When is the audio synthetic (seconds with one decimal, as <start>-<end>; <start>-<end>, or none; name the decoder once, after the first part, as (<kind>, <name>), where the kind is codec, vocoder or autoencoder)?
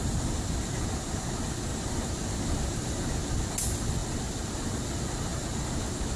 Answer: none